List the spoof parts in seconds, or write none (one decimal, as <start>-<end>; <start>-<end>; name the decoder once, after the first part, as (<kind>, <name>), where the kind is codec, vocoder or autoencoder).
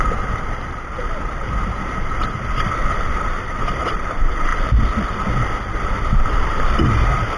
0.0-4.5 (vocoder, BigVGAN v2); 5.9-7.4